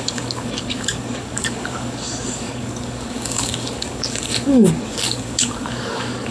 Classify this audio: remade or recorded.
remade